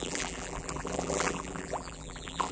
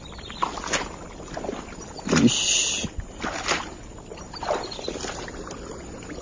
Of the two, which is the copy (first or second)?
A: first